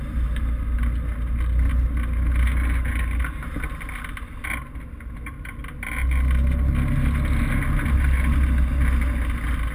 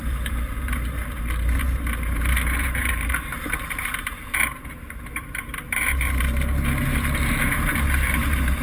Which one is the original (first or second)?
first